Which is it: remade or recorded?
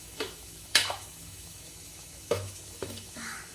remade